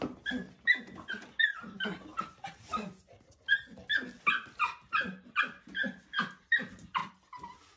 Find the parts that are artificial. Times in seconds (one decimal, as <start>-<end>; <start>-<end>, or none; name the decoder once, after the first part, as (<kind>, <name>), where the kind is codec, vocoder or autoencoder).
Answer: none